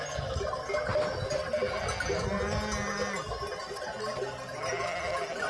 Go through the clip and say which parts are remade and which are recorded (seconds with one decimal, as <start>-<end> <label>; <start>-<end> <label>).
0.0-5.5 recorded

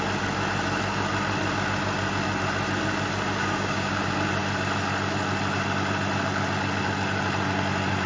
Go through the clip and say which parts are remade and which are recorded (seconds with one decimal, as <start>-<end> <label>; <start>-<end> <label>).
0.0-3.4 recorded; 3.4-4.0 remade; 4.0-8.1 recorded

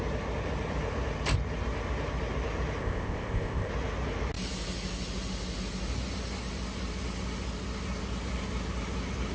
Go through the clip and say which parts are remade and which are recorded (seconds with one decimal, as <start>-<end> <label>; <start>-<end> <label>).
0.0-2.8 recorded; 2.8-3.7 remade; 3.7-9.3 recorded

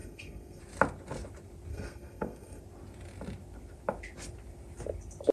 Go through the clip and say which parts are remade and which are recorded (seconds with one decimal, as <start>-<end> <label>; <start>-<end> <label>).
0.0-0.6 remade; 0.6-1.7 recorded; 1.7-2.6 remade; 2.6-5.3 recorded

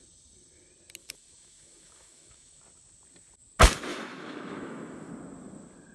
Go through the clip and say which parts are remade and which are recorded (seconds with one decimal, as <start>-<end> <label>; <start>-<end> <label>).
0.0-1.0 recorded; 1.0-2.6 remade; 2.6-3.9 recorded; 3.9-5.1 remade; 5.1-5.9 recorded

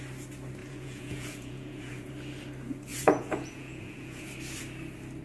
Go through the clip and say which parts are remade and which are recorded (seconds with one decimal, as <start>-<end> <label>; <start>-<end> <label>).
0.0-0.6 recorded; 0.6-2.1 remade; 2.1-2.9 recorded; 2.9-4.3 remade; 4.3-5.2 recorded

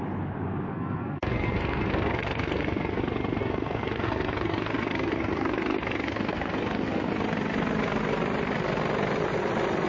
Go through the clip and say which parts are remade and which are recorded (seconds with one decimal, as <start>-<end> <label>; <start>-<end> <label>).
0.0-0.7 recorded; 0.7-3.0 remade; 3.0-3.4 recorded; 3.4-7.1 remade; 7.1-9.9 recorded